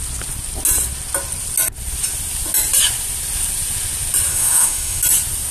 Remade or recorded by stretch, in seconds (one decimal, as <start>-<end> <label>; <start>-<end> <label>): 0.0-4.3 recorded; 4.3-5.0 remade; 5.0-5.5 recorded